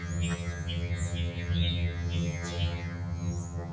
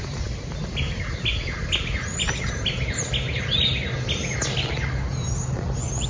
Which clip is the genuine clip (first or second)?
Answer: second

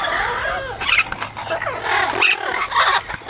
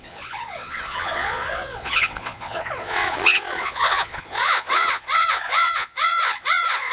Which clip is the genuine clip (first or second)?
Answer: first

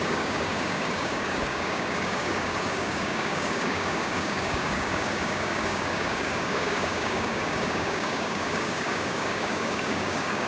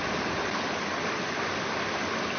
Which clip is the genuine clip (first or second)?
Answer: second